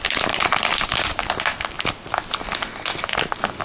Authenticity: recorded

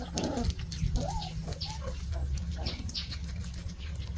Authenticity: recorded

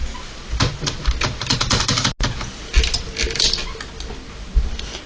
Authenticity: recorded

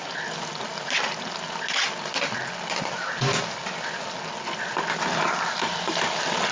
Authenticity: recorded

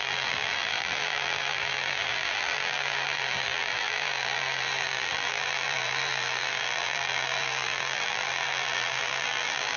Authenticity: remade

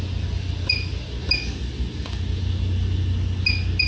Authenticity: recorded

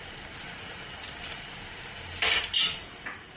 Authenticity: recorded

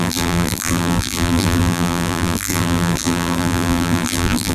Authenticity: remade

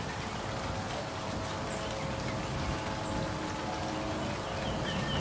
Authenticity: recorded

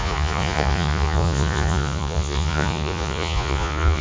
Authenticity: remade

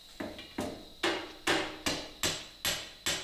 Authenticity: recorded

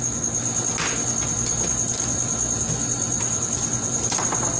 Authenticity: recorded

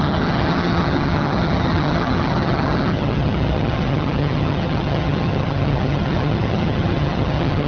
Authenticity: remade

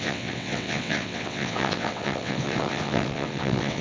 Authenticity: remade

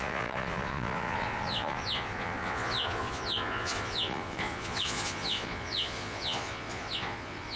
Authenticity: remade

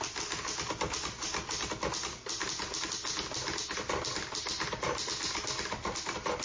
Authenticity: recorded